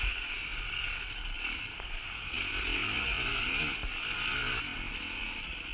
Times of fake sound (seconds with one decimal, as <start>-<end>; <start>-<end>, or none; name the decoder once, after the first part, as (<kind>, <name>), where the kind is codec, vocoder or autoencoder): 1.7-2.3 (codec, SNAC)